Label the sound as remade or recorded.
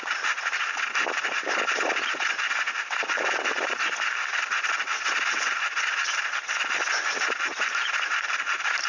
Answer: recorded